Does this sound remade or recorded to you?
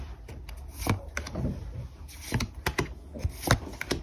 recorded